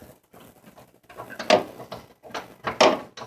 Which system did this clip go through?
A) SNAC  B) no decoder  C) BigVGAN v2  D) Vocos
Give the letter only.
B